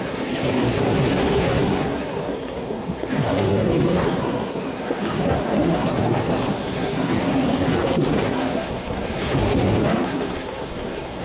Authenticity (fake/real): fake